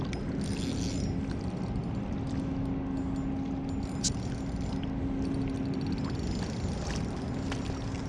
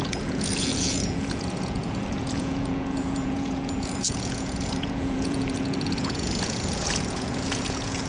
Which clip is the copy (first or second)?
second